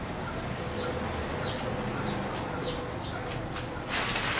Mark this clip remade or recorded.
recorded